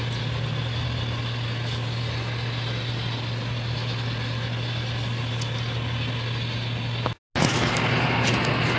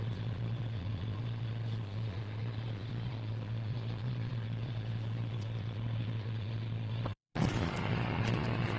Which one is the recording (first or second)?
first